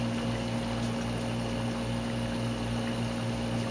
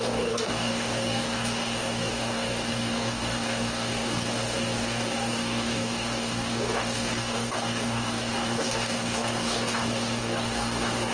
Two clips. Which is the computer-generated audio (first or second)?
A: second